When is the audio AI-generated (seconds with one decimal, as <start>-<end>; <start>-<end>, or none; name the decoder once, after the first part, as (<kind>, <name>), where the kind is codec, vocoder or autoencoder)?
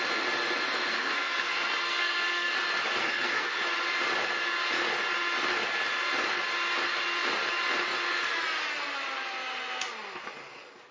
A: 0.9-2.5 (codec, SNAC); 3.0-3.6